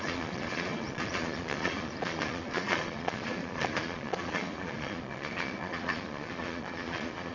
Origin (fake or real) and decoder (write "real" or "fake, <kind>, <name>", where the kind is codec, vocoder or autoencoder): fake, vocoder, Vocos